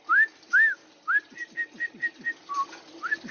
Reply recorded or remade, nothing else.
recorded